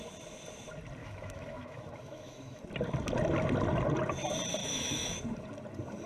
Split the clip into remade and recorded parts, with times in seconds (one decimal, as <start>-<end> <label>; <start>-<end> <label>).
0.0-1.0 recorded; 1.0-2.6 remade; 2.6-4.6 recorded; 4.6-5.2 remade; 5.2-6.1 recorded